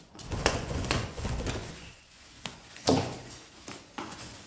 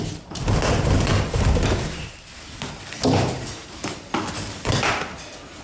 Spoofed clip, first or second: first